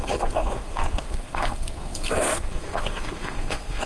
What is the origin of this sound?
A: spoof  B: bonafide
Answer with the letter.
A